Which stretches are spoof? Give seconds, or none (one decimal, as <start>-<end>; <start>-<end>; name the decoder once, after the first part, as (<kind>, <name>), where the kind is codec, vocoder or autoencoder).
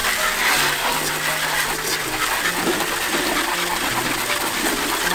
none